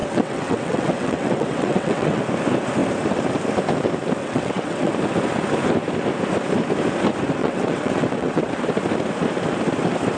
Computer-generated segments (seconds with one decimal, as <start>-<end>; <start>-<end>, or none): 0.0-2.2; 4.2-4.9; 7.4-8.5